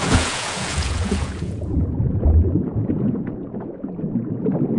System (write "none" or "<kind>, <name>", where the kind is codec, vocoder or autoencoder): vocoder, Vocos